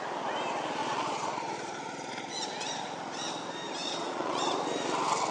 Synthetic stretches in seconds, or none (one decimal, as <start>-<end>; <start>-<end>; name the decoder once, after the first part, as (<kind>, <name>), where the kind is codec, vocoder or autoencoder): 0.8-2.8 (vocoder, Vocos); 3.8-4.5